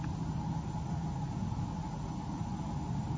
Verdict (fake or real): real